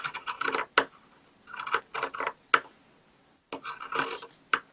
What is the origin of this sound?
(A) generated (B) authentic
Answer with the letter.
B